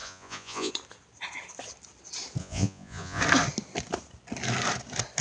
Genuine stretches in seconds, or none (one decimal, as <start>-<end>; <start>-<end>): 0.7-2.4; 3.2-5.2